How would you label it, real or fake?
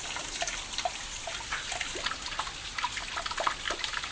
real